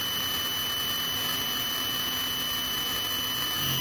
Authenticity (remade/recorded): recorded